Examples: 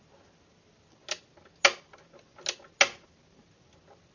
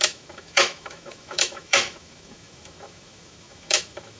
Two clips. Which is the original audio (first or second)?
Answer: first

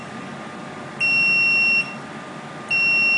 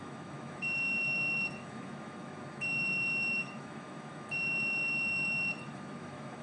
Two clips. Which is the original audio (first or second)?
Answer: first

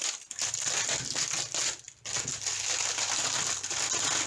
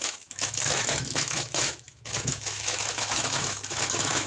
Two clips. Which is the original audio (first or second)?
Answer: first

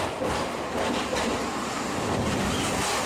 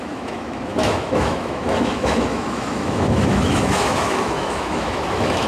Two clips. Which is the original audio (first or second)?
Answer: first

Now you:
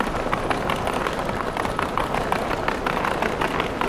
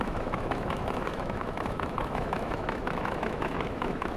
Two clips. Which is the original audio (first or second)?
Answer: first